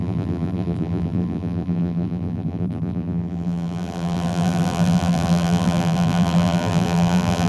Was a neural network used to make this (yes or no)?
yes